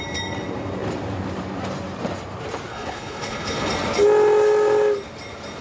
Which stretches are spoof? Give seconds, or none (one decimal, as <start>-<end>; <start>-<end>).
2.7-3.7